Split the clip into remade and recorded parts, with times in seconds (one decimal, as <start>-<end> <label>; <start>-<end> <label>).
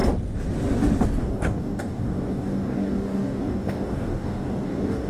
0.0-1.2 recorded; 1.2-5.1 remade